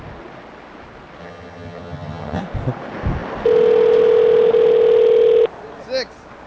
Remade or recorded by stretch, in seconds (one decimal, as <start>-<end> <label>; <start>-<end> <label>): 0.0-1.2 recorded; 1.2-2.4 remade; 2.4-6.5 recorded